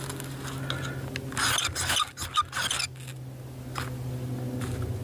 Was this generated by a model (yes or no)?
no